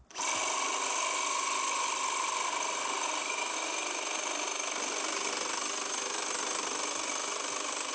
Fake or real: real